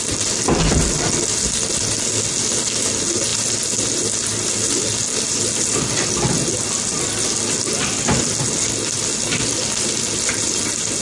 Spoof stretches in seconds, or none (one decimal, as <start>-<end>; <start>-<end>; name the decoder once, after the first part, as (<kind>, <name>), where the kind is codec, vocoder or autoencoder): none